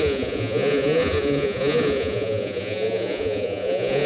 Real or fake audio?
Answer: fake